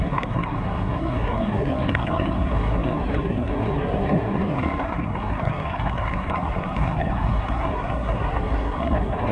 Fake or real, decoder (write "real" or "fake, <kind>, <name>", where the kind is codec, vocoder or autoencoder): fake, codec, SNAC